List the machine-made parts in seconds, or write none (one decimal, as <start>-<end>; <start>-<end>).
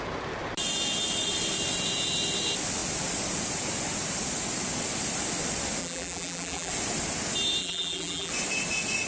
5.8-6.7; 7.6-8.3